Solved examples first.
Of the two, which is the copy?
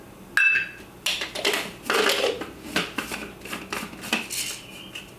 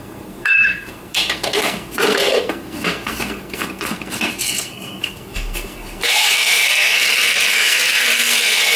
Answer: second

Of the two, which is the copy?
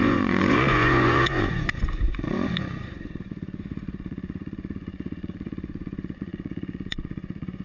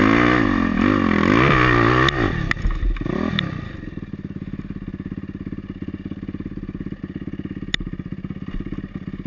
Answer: first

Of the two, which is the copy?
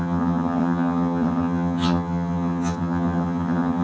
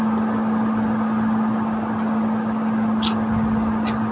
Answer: first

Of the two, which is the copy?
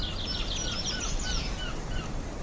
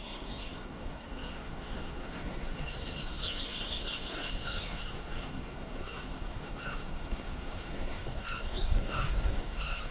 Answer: second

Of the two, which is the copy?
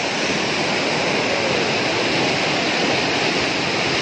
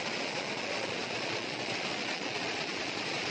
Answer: second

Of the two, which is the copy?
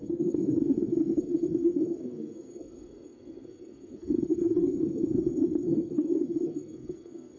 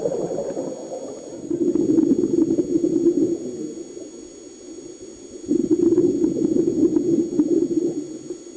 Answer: first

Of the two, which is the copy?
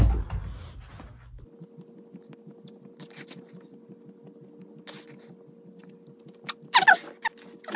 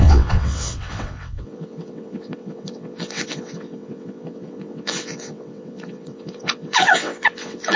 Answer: second